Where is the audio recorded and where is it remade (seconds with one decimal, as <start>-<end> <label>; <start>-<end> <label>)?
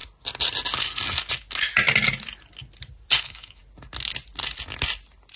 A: 0.0-3.2 recorded; 3.2-3.6 remade; 3.6-5.4 recorded